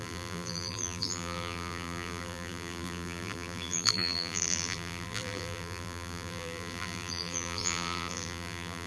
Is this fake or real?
fake